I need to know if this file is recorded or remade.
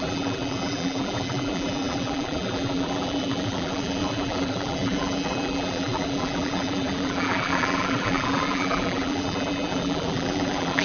remade